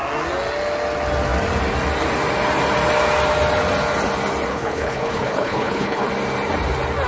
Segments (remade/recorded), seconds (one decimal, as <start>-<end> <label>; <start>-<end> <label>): 0.0-4.5 recorded; 4.5-6.1 remade; 6.1-7.1 recorded